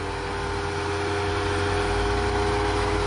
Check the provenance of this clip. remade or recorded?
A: recorded